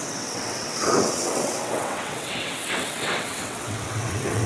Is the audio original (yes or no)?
no